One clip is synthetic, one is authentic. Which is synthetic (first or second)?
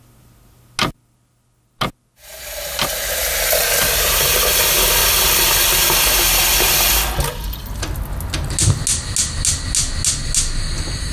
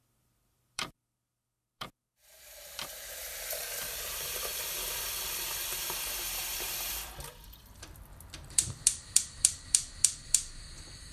second